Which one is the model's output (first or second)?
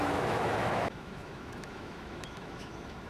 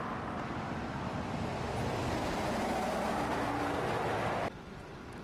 first